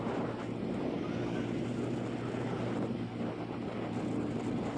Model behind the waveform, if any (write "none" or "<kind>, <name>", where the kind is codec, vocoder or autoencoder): none